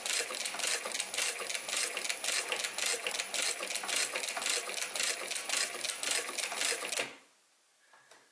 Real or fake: real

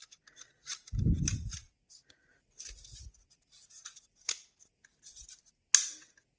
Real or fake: real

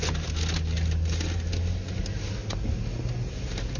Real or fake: real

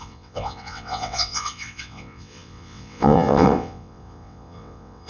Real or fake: fake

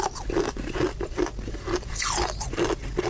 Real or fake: real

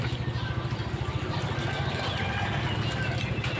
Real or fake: real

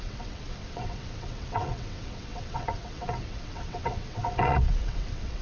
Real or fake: fake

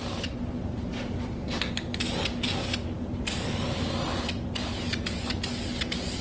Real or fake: real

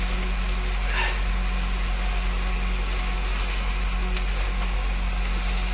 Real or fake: real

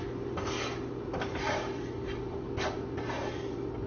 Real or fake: real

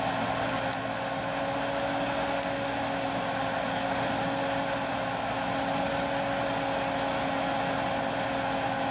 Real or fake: real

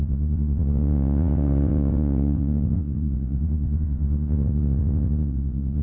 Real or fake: fake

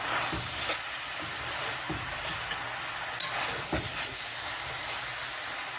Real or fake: real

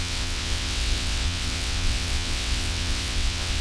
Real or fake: fake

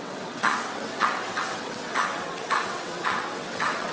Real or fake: fake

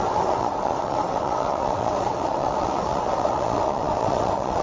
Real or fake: fake